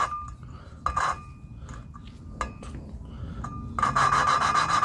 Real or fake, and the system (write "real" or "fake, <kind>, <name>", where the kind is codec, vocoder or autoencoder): real